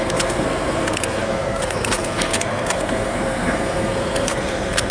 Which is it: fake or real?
fake